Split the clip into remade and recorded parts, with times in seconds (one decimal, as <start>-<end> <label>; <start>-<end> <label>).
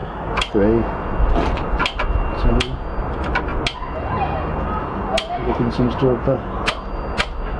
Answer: 0.0-0.5 remade; 0.5-7.6 recorded